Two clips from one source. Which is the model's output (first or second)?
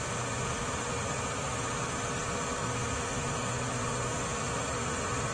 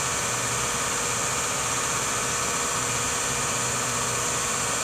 first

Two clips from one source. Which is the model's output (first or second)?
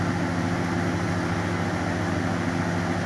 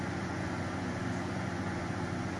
second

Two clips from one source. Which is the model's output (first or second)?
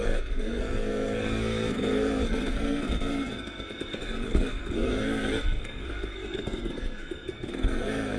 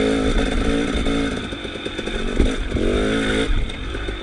first